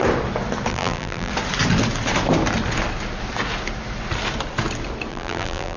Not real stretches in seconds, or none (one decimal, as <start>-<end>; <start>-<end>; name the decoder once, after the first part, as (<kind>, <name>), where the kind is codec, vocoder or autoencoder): 0.7-1.3 (vocoder, BigVGAN v2); 5.1-5.8